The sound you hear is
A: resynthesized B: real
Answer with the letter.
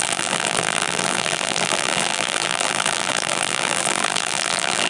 A